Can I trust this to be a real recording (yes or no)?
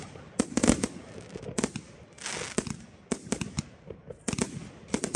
yes